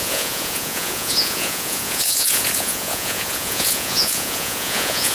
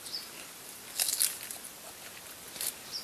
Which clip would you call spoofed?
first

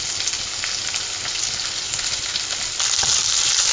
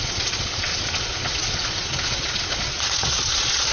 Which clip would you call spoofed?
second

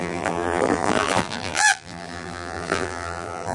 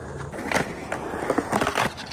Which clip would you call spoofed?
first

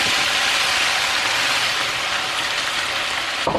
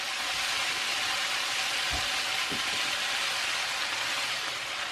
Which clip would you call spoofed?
first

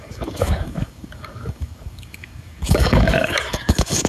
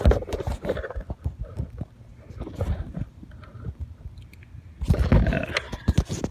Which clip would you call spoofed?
first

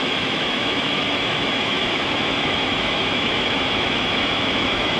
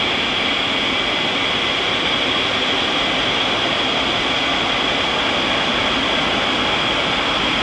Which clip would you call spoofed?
first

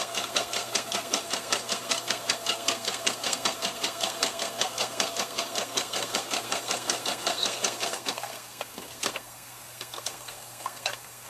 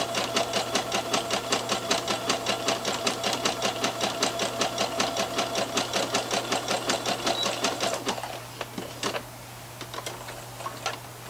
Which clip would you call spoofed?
first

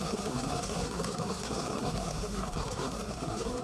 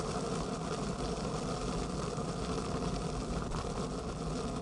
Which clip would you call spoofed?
first